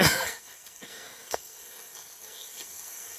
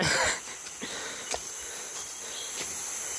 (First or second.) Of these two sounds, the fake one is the first